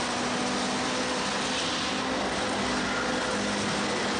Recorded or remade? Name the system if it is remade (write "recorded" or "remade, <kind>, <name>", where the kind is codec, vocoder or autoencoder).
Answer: recorded